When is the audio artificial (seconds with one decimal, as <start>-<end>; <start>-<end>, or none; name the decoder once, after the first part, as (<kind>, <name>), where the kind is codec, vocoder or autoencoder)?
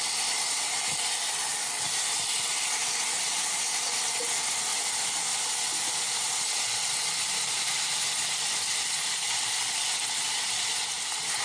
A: none